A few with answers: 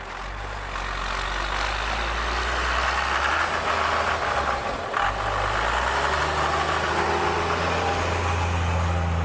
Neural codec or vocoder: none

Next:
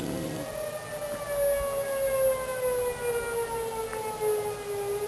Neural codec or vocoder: none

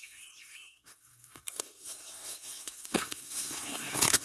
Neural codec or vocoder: codec, SNAC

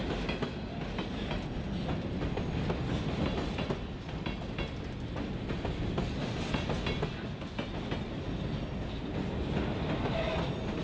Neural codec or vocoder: none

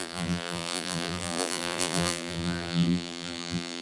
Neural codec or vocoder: vocoder, BigVGAN v2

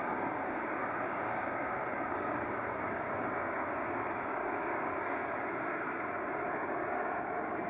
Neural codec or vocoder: codec, DAC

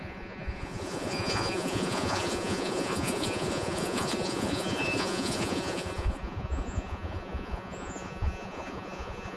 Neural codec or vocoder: vocoder, Vocos